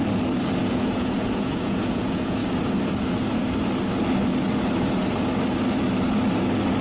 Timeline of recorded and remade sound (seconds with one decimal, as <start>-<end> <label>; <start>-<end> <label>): 0.0-0.7 recorded; 0.7-2.4 remade; 2.4-6.8 recorded